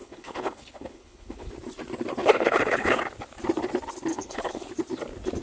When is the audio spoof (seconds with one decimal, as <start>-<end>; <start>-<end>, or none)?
0.0-1.5; 2.2-3.0; 4.1-4.7